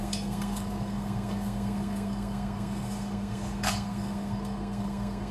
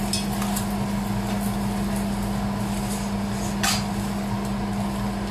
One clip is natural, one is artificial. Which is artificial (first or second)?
first